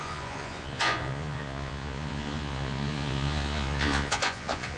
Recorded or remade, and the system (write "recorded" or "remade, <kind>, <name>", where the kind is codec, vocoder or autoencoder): remade, vocoder, Vocos